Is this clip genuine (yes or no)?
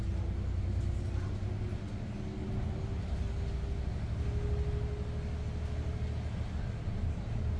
yes